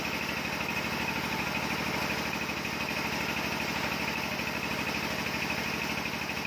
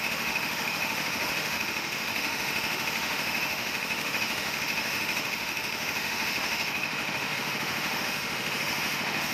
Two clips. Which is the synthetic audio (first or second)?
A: second